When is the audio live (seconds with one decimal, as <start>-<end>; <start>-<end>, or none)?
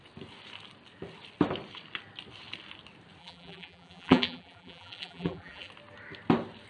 0.0-3.2; 5.7-6.7